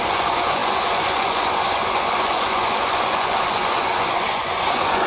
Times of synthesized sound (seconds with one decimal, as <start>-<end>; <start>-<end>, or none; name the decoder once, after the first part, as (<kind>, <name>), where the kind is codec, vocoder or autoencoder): 0.0-5.1 (vocoder, Vocos)